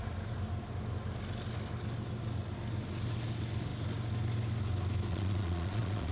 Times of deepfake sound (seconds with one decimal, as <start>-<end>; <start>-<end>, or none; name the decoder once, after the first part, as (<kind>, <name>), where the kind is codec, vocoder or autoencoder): 5.1-6.1 (vocoder, Vocos)